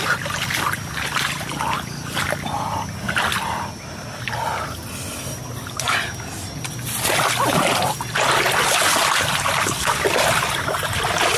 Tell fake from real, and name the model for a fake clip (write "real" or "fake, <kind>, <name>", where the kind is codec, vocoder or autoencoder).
real